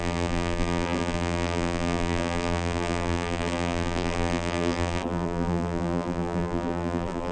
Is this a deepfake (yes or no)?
yes